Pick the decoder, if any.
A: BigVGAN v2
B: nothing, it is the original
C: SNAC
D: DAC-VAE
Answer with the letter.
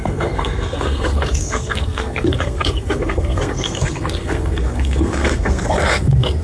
C